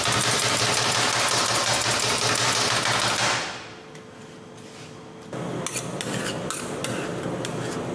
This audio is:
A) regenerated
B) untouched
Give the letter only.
B